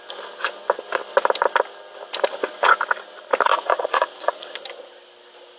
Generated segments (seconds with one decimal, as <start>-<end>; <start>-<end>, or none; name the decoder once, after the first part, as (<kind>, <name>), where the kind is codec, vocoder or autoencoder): 3.5-4.6 (vocoder, Vocos)